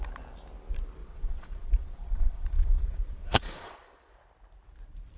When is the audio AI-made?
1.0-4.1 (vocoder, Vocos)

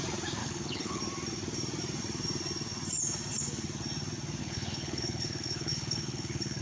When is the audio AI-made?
0.4-1.0 (codec, HILCodec); 4.4-6.6

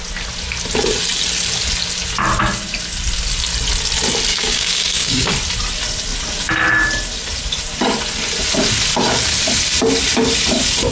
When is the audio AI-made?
4.3-5.3 (codec, DAC)

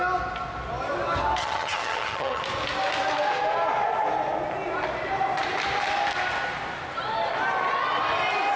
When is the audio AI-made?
1.4-2.4 (vocoder, HiFi-GAN)

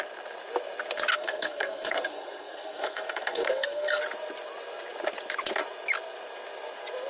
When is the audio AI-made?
1.1-4.0 (codec, SNAC)

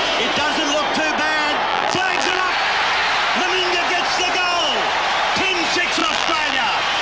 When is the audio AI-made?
1.7-2.4 (vocoder, BigVGAN v2); 6.0-6.6